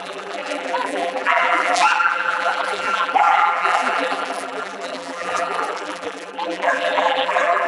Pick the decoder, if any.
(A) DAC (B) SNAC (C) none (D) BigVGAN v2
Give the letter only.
D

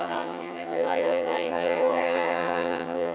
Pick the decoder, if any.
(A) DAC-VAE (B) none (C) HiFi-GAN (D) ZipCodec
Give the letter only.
C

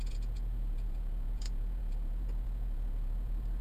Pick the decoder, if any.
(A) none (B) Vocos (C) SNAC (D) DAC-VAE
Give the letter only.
B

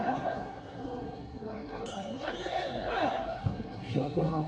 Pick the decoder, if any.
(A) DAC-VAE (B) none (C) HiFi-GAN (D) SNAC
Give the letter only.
D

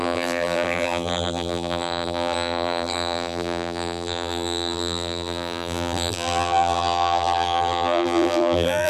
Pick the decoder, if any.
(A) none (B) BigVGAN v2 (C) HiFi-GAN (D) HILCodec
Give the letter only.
B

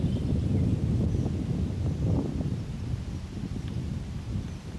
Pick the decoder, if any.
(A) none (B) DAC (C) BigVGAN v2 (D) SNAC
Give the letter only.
A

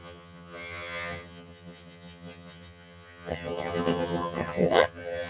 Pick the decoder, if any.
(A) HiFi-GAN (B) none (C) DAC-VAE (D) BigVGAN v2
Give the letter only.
A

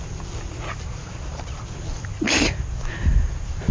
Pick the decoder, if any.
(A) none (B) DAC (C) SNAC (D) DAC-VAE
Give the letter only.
A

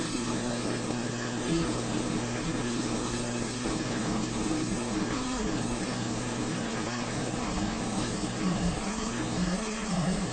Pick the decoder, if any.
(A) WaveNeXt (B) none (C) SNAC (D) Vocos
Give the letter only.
C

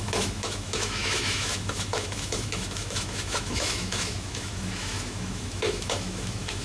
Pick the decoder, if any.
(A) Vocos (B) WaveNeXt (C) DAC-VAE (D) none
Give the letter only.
C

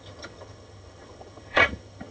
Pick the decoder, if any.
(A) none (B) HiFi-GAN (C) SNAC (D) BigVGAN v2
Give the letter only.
B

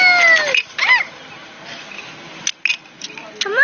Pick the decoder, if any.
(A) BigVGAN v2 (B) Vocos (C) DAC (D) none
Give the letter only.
D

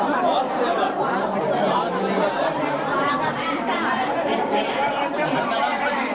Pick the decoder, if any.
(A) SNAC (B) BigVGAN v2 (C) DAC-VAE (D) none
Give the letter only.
B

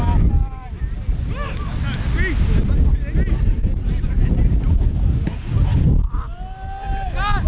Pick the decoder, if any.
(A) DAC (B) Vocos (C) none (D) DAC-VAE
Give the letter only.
C